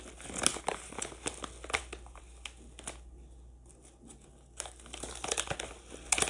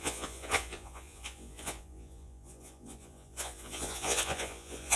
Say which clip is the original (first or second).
first